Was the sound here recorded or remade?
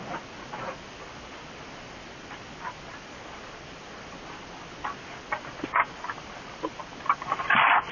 recorded